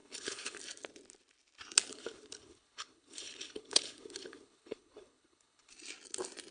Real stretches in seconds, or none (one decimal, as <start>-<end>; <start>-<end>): 0.6-1.9; 5.7-6.5